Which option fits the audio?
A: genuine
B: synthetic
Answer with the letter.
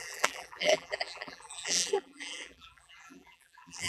B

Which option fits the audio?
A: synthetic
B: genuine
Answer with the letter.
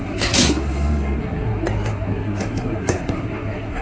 A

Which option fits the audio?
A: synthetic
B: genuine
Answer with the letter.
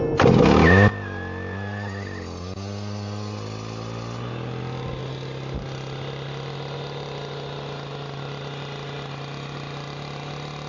B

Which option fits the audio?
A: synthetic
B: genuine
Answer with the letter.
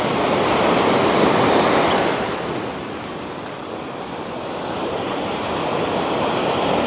B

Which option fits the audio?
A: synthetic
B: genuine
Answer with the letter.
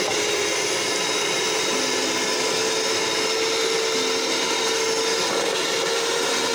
B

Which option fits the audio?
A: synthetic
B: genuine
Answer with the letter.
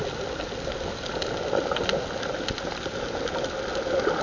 B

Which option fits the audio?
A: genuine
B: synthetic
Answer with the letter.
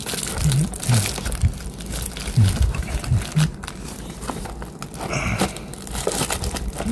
A